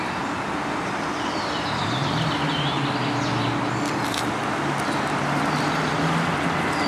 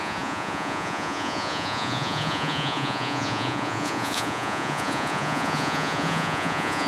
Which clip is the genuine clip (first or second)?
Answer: first